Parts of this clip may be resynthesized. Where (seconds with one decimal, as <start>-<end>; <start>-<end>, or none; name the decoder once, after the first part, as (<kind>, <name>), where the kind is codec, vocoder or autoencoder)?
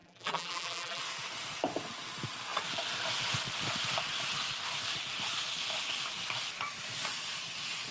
0.0-1.0 (vocoder, BigVGAN v2)